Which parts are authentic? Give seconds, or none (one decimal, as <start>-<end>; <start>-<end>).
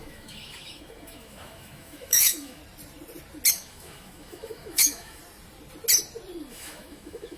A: 2.6-3.5; 5.2-6.5